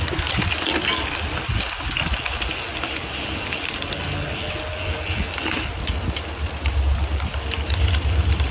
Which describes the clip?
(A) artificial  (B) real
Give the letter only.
B